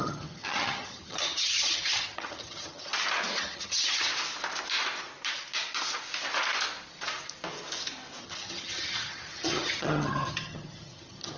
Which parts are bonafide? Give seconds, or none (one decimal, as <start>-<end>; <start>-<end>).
2.9-3.4; 4.1-8.2